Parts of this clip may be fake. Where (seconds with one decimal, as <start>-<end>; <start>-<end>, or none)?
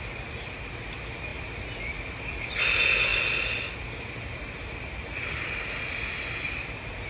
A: none